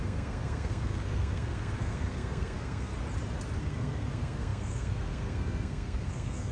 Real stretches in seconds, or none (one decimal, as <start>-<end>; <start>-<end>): 2.9-3.6